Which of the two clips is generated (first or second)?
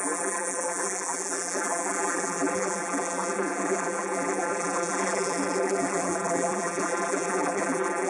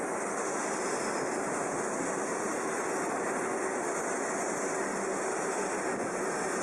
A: first